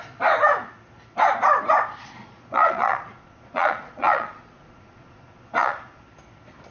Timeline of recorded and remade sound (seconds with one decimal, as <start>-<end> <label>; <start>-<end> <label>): 0.0-2.0 recorded; 2.0-6.0 remade; 6.0-6.7 recorded